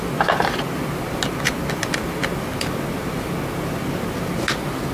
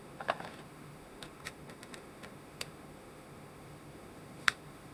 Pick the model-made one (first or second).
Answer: second